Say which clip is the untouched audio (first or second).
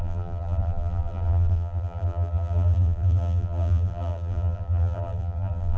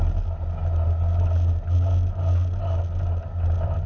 second